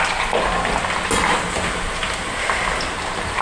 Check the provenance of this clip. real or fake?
real